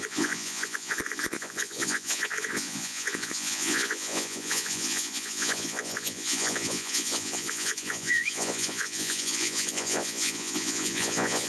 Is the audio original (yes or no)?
no